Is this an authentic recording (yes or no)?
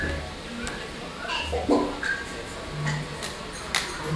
yes